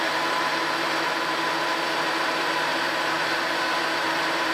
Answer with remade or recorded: recorded